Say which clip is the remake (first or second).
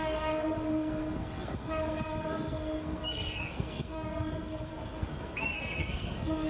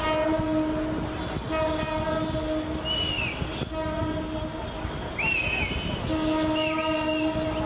first